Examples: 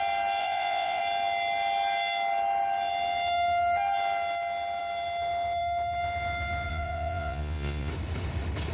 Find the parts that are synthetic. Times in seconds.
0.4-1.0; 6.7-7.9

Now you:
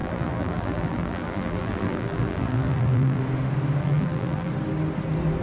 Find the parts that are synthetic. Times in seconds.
0.0-3.2; 3.8-4.5

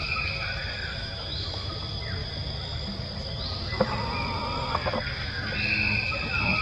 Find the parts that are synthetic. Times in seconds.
0.9-1.7

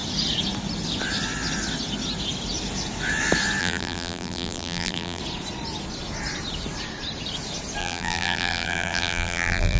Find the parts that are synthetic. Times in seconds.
3.6-5.2; 7.8-9.8